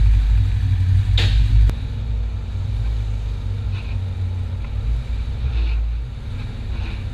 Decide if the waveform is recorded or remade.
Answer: recorded